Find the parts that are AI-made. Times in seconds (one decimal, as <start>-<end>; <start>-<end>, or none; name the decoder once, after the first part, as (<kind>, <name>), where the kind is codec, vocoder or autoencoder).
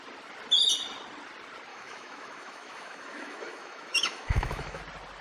1.7-4.8 (autoencoder, DAC-VAE)